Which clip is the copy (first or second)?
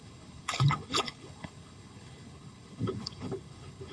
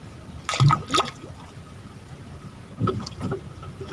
first